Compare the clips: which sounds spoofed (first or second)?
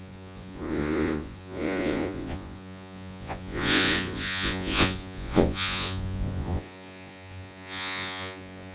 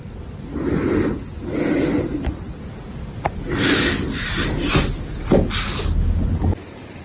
first